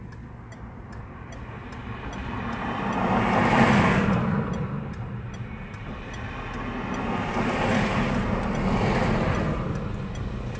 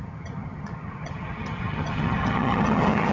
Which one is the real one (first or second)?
first